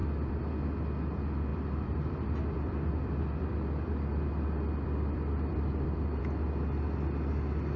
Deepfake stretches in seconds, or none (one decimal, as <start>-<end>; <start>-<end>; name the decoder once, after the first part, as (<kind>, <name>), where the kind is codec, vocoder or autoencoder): 0.0-0.5 (vocoder, BigVGAN v2); 1.5-6.2